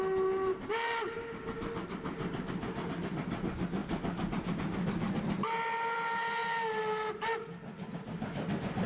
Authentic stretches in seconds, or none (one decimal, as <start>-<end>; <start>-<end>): 0.0-8.9